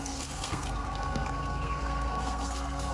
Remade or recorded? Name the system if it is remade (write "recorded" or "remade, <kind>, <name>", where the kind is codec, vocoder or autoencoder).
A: remade, codec, SNAC